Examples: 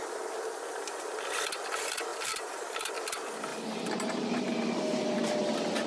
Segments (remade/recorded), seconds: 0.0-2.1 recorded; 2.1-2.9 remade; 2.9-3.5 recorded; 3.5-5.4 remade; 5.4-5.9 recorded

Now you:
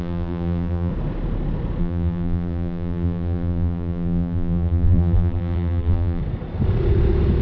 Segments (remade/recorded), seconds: 0.0-0.9 remade; 0.9-1.8 recorded; 1.8-6.2 remade; 6.2-7.4 recorded

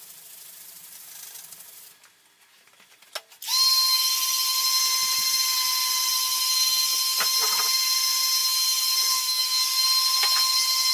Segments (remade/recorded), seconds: 0.0-10.9 recorded